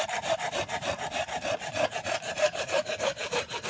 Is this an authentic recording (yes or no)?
yes